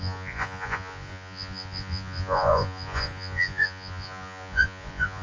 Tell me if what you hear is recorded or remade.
remade